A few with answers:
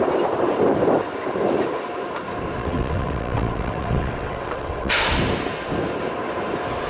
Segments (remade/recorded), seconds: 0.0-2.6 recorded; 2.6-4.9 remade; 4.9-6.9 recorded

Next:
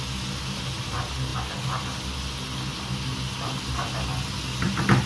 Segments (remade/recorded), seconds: 0.0-5.1 recorded

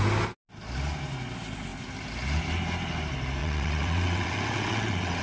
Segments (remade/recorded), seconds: 0.0-3.4 recorded; 3.4-5.2 remade

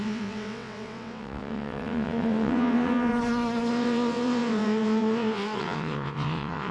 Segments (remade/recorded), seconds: 0.0-3.1 remade; 3.1-3.7 recorded; 3.7-6.7 remade

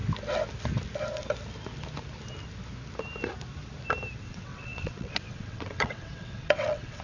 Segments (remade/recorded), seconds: 0.0-4.2 recorded; 4.2-7.0 remade